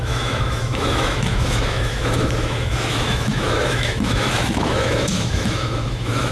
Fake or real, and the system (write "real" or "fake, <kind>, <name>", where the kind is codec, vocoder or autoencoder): fake, autoencoder, DAC-VAE